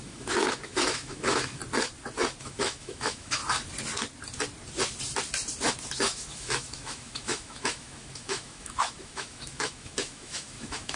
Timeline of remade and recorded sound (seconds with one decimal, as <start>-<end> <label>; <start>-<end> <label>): 0.0-1.6 remade; 1.6-2.4 recorded; 2.4-3.4 remade; 3.4-6.0 recorded; 6.0-11.0 remade